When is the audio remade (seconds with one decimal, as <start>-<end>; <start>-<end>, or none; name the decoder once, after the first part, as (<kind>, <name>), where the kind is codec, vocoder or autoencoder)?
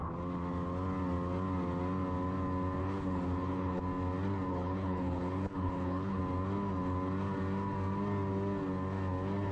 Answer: 2.8-3.8 (codec, HILCodec); 4.5-6.2